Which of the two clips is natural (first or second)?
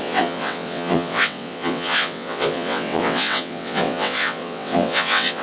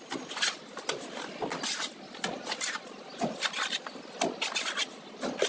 second